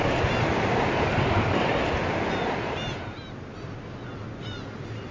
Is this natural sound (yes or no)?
yes